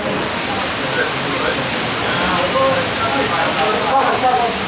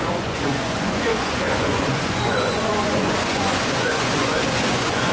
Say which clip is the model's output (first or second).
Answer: second